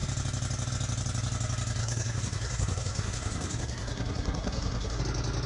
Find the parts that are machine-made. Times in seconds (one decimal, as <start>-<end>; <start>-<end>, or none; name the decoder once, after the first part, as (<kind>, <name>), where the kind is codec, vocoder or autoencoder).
1.8-5.0 (codec, SNAC)